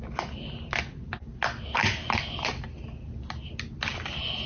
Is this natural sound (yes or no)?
yes